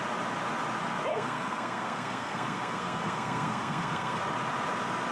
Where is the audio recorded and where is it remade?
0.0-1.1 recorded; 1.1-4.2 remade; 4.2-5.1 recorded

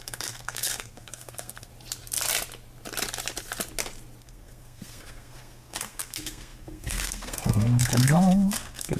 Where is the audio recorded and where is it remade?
0.0-1.7 remade; 1.7-4.2 recorded; 4.2-9.0 remade

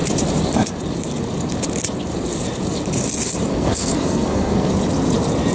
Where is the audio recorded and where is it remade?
0.0-3.5 recorded; 3.5-4.7 remade; 4.7-5.5 recorded

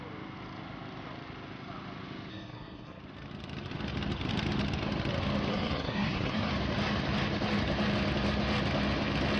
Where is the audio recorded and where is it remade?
0.0-2.3 recorded; 2.3-3.0 remade; 3.0-5.5 recorded; 5.5-6.5 remade; 6.5-9.4 recorded

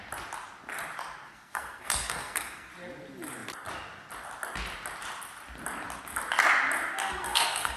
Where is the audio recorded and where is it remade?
0.0-1.3 recorded; 1.3-2.7 remade; 2.7-7.0 recorded; 7.0-7.8 remade

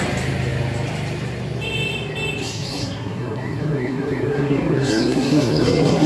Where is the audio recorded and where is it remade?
0.0-2.4 recorded; 2.4-6.1 remade

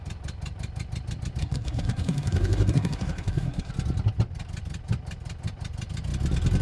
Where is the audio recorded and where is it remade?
0.0-1.4 recorded; 1.4-3.7 remade; 3.7-6.6 recorded